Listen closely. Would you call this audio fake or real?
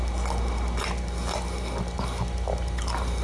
real